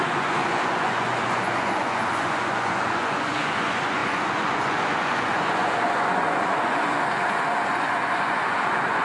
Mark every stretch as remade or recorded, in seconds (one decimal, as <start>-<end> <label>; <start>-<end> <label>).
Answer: 0.0-9.0 remade